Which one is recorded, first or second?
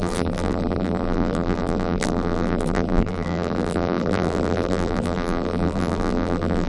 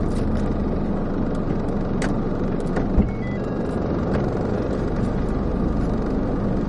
second